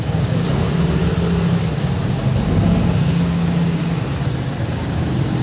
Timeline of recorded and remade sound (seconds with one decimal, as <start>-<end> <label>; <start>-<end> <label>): 0.0-1.0 remade; 1.0-2.4 recorded; 2.4-3.8 remade; 3.8-4.6 recorded; 4.6-5.4 remade